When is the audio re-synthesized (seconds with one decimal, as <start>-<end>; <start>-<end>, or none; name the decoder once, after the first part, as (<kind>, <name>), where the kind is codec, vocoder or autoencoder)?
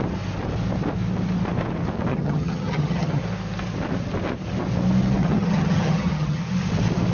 2.1-3.2 (vocoder, HiFi-GAN); 5.2-6.4